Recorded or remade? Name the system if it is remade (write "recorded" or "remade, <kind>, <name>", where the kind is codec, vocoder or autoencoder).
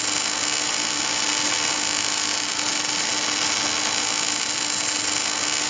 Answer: recorded